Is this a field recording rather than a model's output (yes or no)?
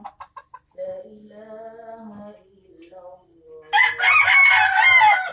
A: yes